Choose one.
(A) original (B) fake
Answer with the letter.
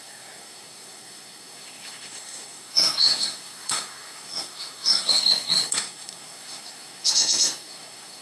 B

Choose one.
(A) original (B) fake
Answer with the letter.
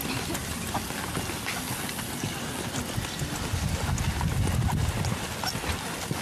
A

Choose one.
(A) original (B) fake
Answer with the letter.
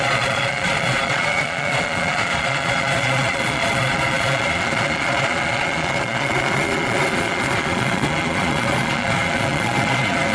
B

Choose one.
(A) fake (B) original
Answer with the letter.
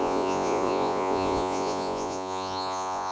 A